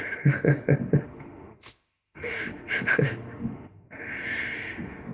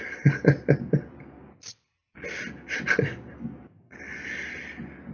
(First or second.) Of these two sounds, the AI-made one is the first